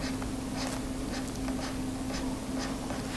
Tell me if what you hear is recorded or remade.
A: recorded